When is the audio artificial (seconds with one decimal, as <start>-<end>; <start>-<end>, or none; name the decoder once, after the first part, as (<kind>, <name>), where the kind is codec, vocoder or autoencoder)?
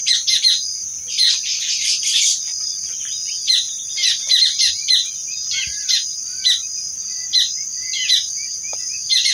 1.5-2.2 (vocoder, BigVGAN v2)